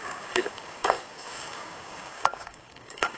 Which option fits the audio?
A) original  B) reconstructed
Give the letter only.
B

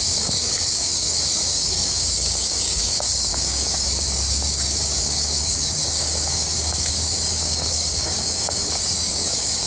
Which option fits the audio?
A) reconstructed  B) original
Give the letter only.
A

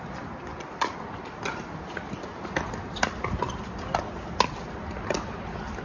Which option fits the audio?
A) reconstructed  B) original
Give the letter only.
B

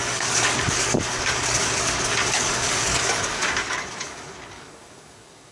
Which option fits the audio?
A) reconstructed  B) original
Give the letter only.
A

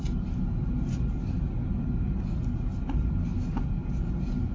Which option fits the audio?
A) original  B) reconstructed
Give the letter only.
A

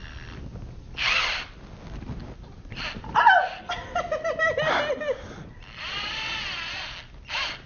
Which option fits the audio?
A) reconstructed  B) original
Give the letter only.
B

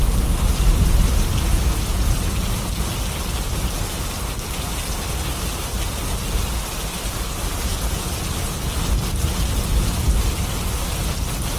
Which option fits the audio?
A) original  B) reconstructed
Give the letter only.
A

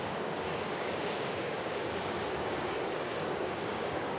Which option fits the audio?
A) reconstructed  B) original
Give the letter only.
A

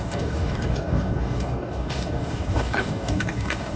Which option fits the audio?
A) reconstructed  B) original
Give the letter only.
A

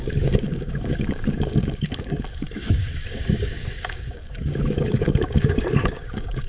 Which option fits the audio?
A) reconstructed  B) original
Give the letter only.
A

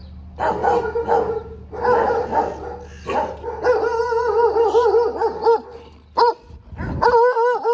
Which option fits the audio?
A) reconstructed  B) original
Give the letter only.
B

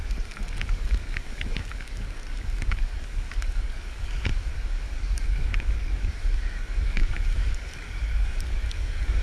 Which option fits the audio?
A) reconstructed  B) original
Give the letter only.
A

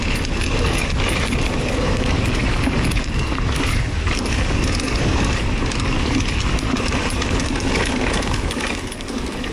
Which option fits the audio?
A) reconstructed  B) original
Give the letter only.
A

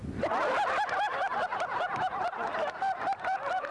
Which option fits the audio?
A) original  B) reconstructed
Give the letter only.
A